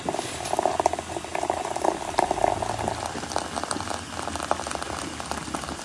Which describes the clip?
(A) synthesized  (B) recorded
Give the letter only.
B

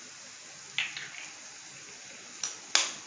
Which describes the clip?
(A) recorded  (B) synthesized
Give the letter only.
A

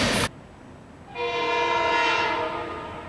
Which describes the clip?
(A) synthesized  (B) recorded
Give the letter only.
B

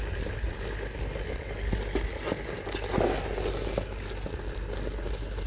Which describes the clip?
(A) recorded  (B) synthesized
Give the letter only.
A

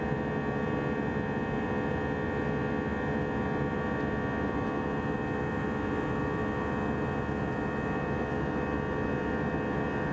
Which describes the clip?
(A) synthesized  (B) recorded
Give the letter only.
B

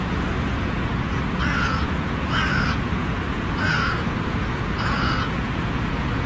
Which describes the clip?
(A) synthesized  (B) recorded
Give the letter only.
A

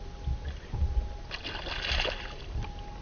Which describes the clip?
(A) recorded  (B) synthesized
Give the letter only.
A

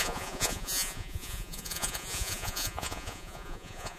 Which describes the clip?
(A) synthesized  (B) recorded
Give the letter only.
A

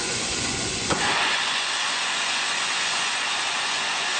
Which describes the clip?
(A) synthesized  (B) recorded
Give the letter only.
A